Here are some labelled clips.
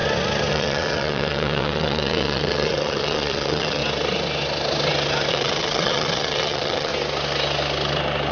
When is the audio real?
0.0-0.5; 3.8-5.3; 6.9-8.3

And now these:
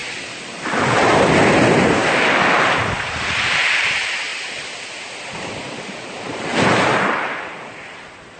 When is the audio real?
0.0-1.4; 2.0-2.8; 4.3-5.2

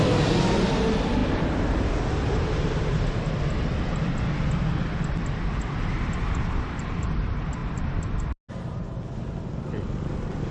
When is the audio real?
0.0-10.5

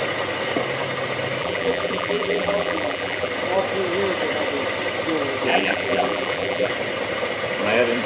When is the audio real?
0.0-1.4; 3.3-5.5; 6.7-8.1